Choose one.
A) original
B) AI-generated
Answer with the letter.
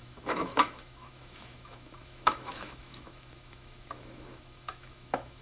B